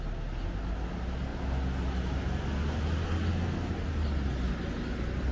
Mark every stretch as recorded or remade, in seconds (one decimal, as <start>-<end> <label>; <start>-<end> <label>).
0.0-5.3 recorded